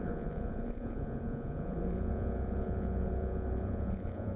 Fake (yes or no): yes